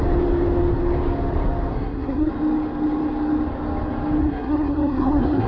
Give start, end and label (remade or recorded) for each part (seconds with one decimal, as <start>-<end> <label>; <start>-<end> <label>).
0.0-1.7 recorded; 1.7-2.3 remade; 2.3-4.2 recorded; 4.2-5.5 remade